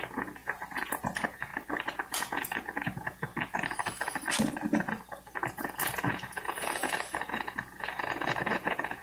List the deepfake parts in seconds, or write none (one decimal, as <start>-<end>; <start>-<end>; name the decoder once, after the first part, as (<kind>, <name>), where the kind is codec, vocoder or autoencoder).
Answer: 0.0-1.5 (vocoder, Vocos); 2.1-3.3; 5.5-9.0